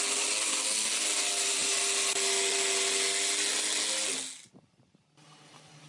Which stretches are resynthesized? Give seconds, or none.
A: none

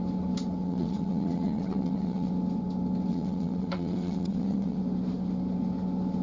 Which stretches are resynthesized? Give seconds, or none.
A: 0.6-2.3 (vocoder, WaveNeXt); 3.1-4.8

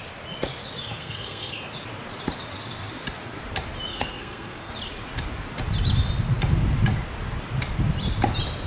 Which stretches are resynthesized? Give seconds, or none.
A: 1.0-1.6 (codec, SNAC); 3.9-4.7